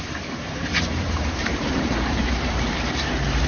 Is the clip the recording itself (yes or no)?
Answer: no